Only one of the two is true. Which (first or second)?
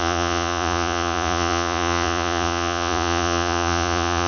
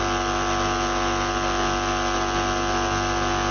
second